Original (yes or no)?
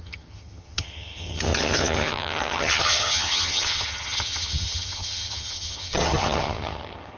no